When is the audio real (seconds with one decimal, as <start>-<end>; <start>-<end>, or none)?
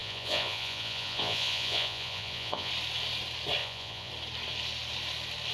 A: 2.7-3.6; 4.1-5.5